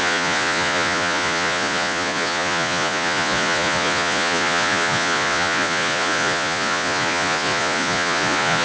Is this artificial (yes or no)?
yes